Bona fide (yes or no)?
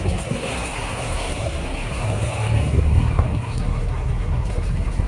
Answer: no